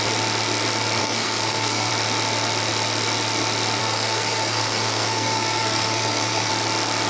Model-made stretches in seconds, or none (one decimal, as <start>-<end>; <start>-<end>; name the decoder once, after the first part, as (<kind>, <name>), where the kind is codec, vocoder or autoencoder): 1.0-1.9 (codec, SNAC); 3.8-6.5